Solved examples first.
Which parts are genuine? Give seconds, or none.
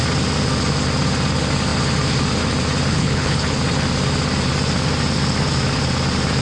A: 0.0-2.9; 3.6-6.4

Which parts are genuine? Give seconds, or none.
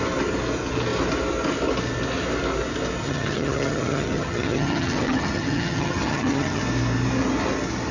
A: 0.0-3.0; 6.6-7.9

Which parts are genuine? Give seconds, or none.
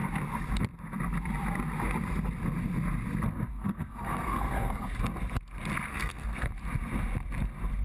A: 0.0-3.5; 4.8-5.9; 6.5-7.8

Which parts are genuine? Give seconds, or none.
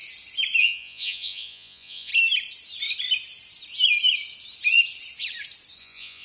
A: 0.0-0.6; 2.1-5.8